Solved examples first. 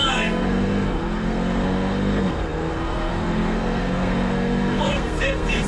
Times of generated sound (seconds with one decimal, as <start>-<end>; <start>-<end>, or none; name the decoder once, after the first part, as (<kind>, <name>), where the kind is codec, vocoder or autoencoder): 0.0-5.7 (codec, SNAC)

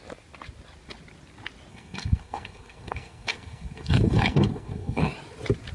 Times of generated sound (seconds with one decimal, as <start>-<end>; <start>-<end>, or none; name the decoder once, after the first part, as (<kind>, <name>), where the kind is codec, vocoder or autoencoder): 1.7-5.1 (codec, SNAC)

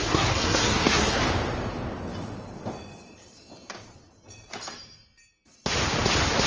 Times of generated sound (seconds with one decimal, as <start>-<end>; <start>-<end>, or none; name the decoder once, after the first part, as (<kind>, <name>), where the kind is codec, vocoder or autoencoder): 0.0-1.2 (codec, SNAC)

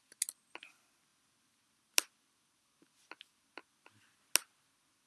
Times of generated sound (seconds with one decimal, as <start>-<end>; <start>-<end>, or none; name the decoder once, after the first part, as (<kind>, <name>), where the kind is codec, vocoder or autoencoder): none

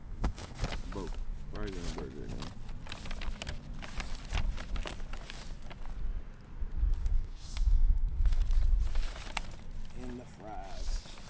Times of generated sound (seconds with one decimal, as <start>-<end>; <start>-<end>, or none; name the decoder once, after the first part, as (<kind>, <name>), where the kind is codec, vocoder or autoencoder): 0.0-0.6 (codec, SNAC); 7.0-8.4

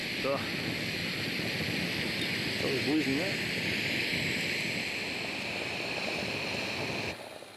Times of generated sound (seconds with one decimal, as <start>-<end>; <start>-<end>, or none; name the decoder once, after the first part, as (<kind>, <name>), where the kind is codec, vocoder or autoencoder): none